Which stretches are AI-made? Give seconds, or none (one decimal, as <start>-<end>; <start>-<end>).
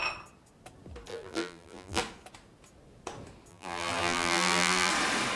1.1-2.0; 3.5-4.9